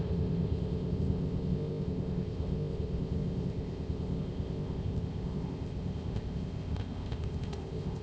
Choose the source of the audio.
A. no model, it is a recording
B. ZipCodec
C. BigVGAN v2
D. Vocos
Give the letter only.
B